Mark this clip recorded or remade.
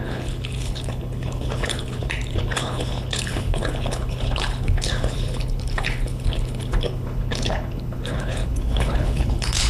remade